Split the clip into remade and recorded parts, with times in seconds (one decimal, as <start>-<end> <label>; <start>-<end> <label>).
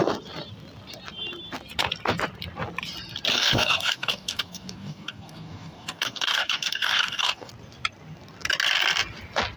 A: 0.0-3.3 recorded; 3.3-7.5 remade; 7.5-9.6 recorded